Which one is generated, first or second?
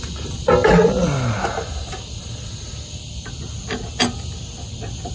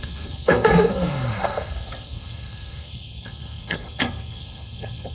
second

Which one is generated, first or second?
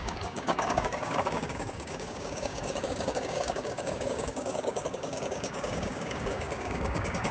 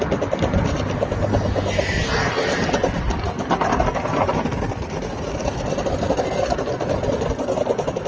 first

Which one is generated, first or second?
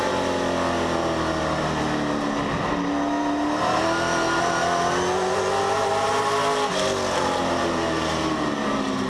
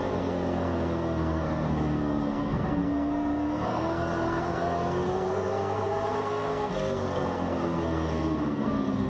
second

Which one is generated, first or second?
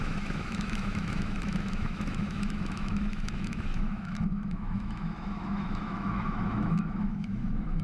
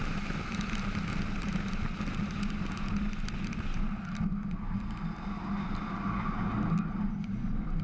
first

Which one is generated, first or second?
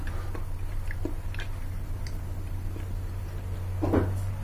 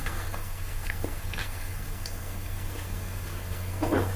second